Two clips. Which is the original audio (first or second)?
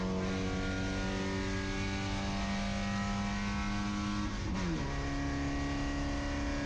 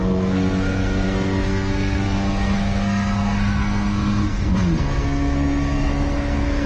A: first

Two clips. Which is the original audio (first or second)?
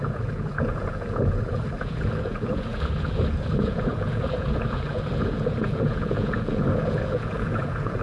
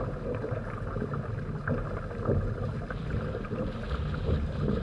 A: second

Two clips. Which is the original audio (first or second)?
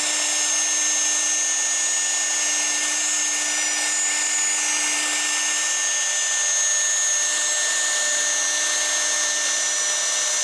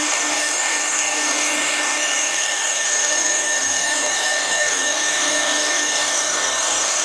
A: first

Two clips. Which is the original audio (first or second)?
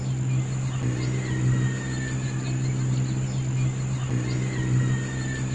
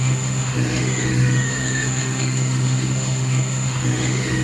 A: first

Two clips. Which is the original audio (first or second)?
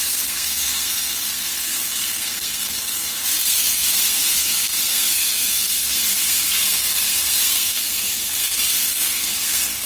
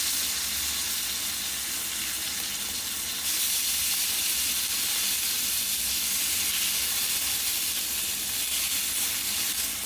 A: second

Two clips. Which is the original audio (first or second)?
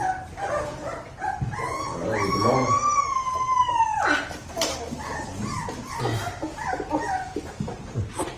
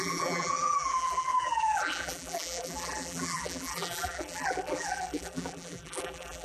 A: first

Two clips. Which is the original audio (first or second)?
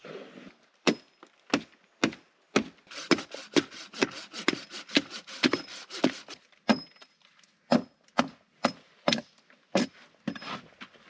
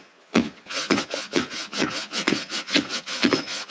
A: first